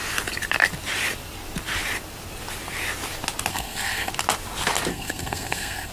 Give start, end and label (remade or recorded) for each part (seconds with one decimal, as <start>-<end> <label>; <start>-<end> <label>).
0.0-3.5 recorded; 3.5-4.1 remade; 4.1-4.9 recorded; 4.9-5.9 remade

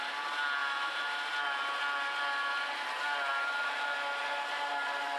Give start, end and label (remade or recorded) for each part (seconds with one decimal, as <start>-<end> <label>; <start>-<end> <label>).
0.0-5.2 recorded